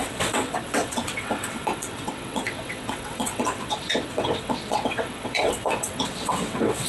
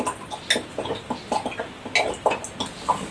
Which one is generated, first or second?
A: first